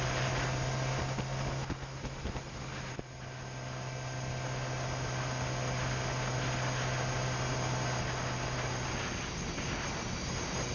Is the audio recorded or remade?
recorded